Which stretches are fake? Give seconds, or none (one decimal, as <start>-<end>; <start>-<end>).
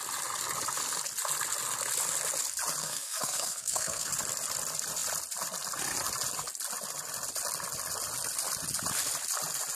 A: 2.8-4.1